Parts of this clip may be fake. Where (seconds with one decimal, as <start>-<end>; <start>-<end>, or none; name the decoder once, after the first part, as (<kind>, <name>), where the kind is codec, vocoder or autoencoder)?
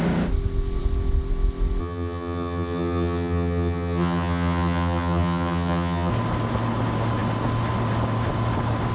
1.8-6.1 (vocoder, HiFi-GAN)